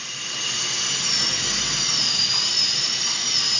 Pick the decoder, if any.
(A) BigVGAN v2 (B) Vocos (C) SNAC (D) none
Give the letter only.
D